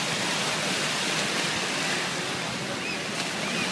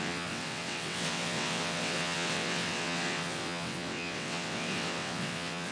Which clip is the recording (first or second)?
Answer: first